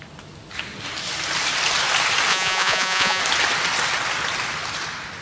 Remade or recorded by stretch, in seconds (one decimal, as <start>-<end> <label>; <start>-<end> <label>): 0.0-2.3 recorded; 2.3-3.2 remade; 3.2-5.2 recorded